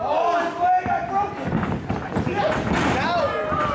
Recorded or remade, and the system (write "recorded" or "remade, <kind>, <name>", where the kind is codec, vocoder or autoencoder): recorded